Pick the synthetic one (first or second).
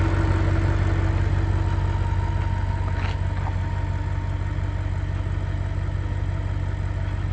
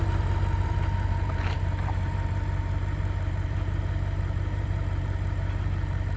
second